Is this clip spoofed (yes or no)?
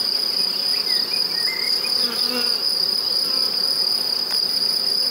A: no